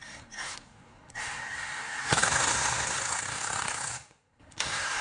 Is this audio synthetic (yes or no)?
yes